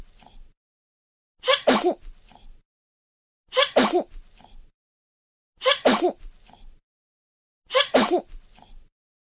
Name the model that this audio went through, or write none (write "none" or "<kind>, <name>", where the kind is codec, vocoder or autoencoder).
none